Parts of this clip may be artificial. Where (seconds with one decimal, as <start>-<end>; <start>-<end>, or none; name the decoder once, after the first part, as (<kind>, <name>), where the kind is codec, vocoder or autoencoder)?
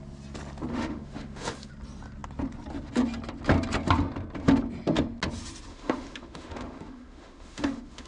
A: 0.7-1.7 (autoencoder, DAC-VAE); 5.7-8.1